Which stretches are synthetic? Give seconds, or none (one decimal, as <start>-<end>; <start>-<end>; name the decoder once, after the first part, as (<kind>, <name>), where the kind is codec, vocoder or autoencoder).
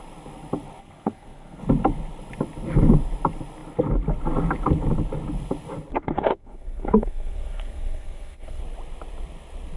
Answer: 0.8-1.6 (codec, SNAC); 5.9-8.6